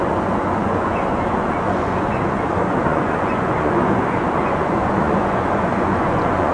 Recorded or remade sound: remade